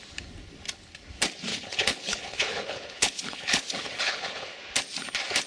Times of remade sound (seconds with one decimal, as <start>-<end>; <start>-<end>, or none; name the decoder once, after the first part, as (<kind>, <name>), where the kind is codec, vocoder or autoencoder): 1.5-4.6 (codec, HILCodec)